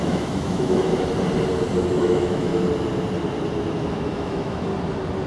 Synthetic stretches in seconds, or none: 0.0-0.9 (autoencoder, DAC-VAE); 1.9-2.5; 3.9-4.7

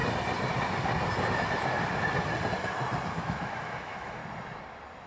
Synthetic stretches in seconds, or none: 3.1-4.2 (autoencoder, DAC-VAE)

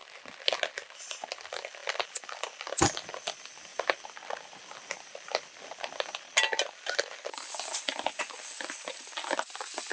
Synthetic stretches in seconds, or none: none

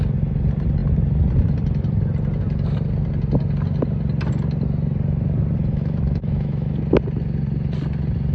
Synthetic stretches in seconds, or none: 5.6-6.7 (autoencoder, DAC-VAE)

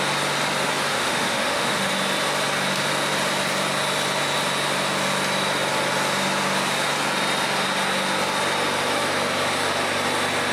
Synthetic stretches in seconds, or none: 0.9-1.9 (autoencoder, DAC-VAE)